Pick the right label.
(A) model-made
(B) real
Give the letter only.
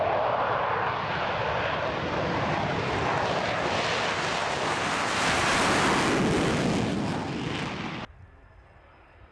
B